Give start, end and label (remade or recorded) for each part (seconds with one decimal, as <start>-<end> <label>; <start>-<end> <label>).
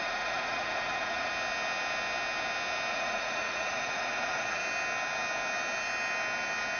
0.0-1.3 remade; 1.3-2.9 recorded; 2.9-4.6 remade; 4.6-6.8 recorded